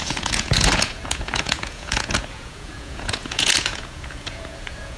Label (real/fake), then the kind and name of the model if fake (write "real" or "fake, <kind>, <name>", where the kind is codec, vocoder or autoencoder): fake, vocoder, Vocos